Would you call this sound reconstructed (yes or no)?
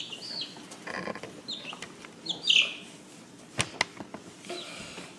no